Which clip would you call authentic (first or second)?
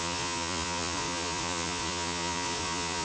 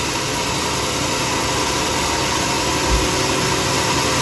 second